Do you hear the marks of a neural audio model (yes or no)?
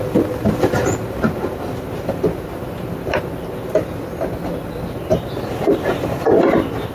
no